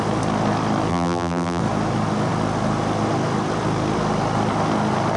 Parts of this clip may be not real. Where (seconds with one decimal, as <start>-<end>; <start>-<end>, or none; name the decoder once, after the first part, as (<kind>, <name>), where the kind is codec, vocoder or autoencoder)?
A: 0.9-1.6 (vocoder, BigVGAN v2)